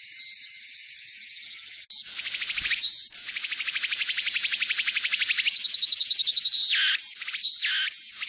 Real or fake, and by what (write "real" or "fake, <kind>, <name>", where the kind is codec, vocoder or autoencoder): real